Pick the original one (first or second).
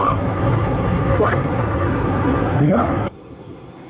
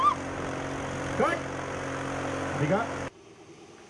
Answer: second